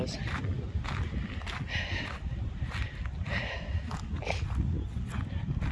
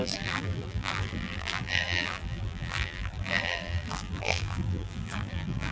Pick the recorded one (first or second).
first